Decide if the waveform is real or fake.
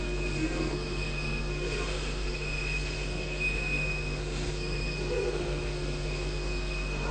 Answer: fake